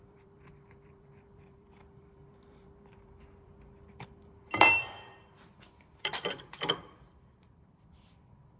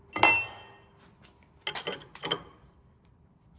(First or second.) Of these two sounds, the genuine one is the second